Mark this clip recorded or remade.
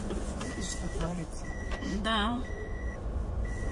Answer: remade